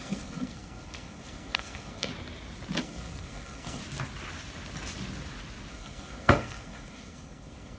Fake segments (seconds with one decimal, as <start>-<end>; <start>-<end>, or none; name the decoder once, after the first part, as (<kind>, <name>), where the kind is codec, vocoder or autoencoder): 0.0-2.1 (codec, SNAC); 2.8-3.8; 5.7-7.8